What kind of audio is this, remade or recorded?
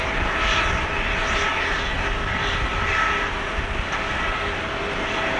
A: recorded